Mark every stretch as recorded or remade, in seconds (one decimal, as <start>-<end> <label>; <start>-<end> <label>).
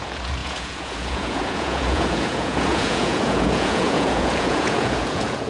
0.0-5.5 remade